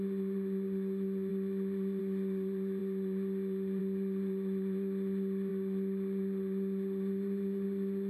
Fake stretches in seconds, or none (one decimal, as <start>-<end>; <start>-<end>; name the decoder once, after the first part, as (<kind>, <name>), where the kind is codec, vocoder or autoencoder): none